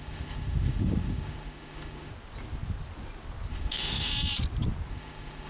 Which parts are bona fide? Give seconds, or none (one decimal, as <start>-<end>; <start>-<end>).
2.1-3.5; 4.1-4.9